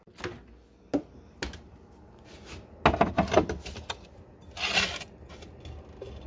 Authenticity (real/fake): real